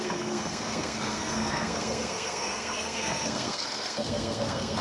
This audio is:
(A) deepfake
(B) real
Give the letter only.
A